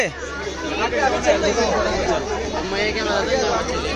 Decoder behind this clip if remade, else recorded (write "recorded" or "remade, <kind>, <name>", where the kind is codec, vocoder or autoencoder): recorded